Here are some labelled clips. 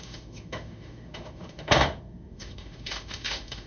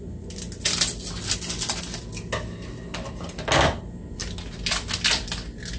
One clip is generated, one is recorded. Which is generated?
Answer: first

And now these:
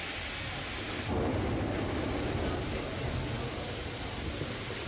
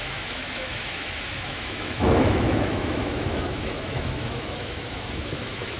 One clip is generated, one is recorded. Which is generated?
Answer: second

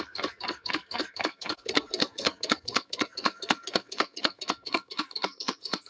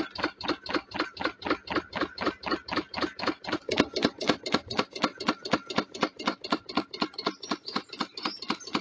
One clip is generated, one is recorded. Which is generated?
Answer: first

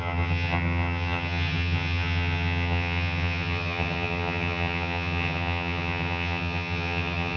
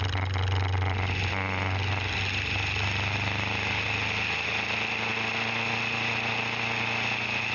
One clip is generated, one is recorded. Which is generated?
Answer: first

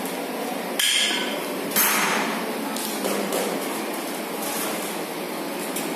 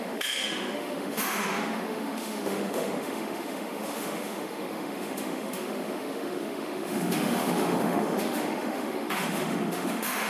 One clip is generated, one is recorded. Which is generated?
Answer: second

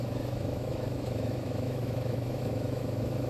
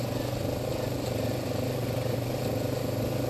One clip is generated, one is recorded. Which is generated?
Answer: first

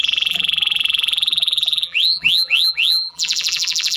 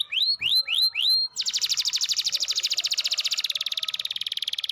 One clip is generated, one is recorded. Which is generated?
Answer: first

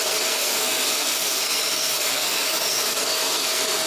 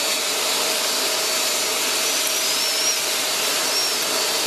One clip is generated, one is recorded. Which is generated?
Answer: first